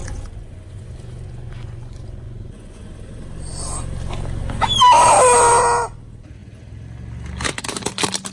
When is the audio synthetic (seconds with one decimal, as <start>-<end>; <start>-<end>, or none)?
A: 0.0-2.9